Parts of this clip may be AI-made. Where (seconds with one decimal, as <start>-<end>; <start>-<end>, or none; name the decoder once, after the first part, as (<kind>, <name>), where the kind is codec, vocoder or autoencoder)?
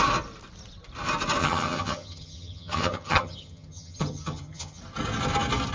1.4-4.8 (vocoder, HiFi-GAN)